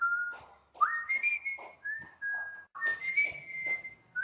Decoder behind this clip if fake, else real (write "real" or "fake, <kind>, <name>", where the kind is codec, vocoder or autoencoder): real